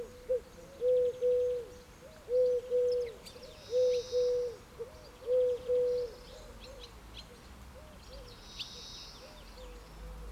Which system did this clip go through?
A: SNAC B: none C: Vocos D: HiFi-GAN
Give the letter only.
B